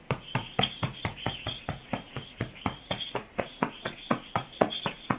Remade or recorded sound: remade